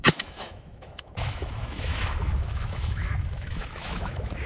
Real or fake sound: fake